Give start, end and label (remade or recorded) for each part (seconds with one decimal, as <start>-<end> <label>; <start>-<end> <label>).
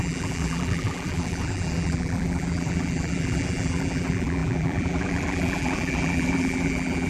0.0-7.1 remade